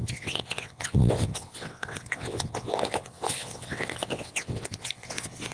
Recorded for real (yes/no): no